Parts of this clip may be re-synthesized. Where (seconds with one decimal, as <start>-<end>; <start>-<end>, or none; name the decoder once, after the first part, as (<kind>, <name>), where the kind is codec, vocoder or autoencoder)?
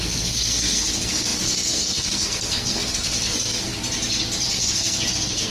0.0-3.7 (codec, SNAC); 4.5-5.5